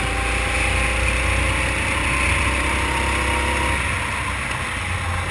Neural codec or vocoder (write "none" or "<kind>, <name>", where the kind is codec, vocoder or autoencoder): none